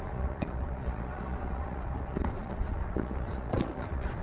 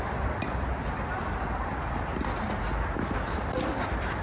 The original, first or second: second